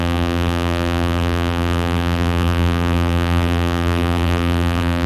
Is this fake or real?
fake